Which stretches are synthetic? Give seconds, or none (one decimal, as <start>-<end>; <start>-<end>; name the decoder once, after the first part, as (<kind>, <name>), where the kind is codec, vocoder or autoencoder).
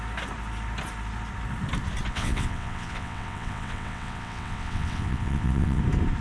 2.1-5.8 (vocoder, WaveNeXt)